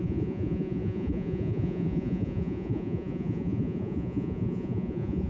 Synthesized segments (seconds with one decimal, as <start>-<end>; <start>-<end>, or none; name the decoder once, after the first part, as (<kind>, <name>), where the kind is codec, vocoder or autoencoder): 0.0-5.3 (vocoder, Vocos)